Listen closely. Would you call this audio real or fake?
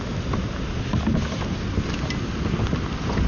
real